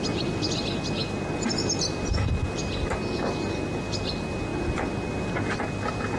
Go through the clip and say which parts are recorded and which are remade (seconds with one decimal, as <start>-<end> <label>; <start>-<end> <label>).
0.0-6.2 recorded